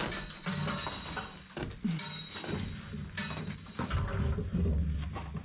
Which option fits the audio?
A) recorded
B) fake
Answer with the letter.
A